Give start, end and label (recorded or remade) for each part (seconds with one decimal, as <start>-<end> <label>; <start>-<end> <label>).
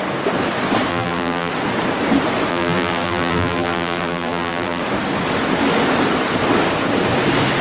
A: 0.0-0.9 recorded; 0.9-1.5 remade; 1.5-2.5 recorded; 2.5-4.8 remade; 4.8-7.6 recorded